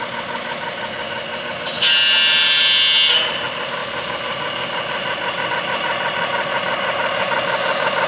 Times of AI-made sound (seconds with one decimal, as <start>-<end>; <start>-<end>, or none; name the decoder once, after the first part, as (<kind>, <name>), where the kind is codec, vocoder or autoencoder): none